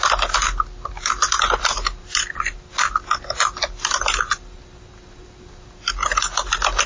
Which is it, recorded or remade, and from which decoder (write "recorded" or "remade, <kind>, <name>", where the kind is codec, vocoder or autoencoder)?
recorded